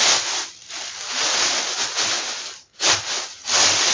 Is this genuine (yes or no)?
yes